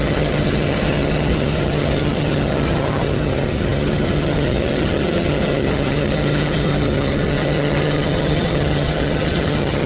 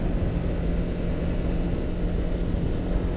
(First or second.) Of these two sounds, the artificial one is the first